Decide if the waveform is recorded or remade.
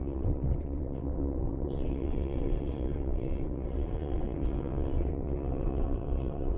remade